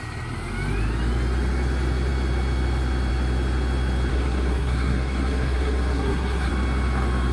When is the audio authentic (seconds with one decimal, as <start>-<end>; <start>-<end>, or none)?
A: 0.0-4.1; 6.5-7.3